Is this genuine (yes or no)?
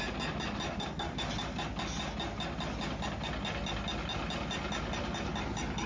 yes